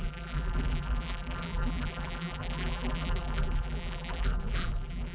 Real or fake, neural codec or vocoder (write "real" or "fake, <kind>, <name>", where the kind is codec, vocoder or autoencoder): fake, vocoder, BigVGAN v2